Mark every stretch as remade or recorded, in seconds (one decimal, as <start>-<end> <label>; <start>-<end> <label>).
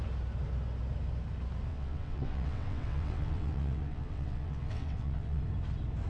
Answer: 0.0-1.7 recorded; 1.7-5.4 remade; 5.4-6.1 recorded